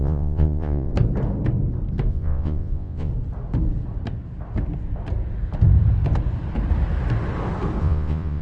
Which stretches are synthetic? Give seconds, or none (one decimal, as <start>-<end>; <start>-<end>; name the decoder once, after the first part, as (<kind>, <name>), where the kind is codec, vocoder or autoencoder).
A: 0.0-0.9 (vocoder, Vocos); 2.1-3.1; 7.8-8.4